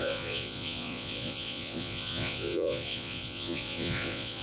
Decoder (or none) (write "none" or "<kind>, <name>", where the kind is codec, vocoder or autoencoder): vocoder, Vocos